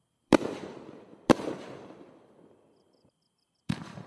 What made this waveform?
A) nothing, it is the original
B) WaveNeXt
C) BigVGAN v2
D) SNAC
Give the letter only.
C